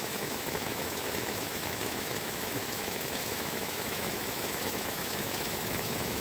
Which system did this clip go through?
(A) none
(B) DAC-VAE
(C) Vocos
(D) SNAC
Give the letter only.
B